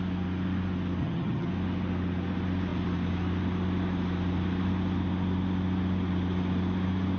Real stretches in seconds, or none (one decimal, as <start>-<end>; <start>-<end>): 0.0-1.0; 1.5-7.2